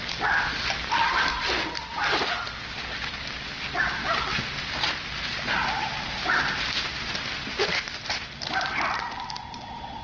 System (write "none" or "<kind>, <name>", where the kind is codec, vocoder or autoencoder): none